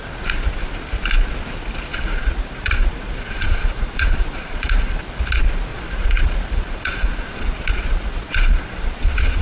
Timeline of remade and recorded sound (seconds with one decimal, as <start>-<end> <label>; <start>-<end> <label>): 0.0-1.9 recorded; 1.9-5.0 remade; 5.0-5.7 recorded; 5.7-9.4 remade